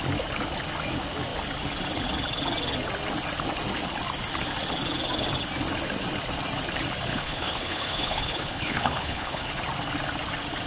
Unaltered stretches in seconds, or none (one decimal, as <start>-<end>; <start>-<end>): 0.0-7.1; 9.6-10.7